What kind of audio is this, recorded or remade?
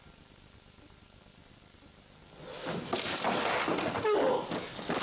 recorded